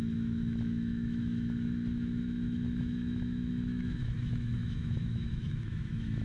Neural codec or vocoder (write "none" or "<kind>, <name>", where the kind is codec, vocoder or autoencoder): autoencoder, DAC-VAE